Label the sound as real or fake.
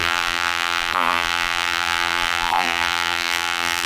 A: fake